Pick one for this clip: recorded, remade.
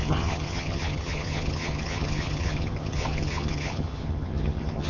remade